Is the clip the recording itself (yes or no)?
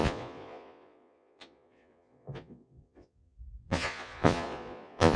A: no